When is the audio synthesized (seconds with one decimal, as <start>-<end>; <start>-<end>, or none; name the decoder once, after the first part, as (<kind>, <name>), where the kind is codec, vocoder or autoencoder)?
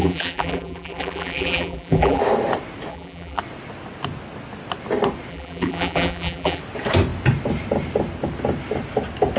0.0-2.2 (vocoder, BigVGAN v2); 2.9-3.4; 5.3-6.6